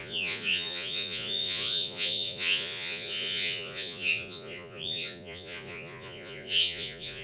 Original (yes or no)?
no